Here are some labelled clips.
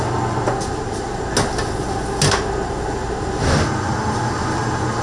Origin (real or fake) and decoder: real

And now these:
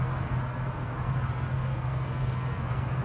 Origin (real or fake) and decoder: fake, codec, SNAC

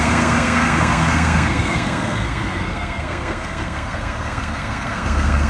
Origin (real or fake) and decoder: fake, codec, SNAC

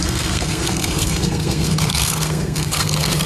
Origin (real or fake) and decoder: fake, codec, SNAC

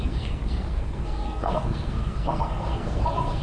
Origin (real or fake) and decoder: fake, codec, SNAC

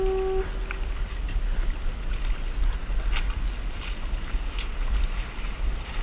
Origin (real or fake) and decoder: real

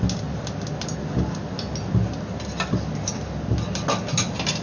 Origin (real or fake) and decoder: real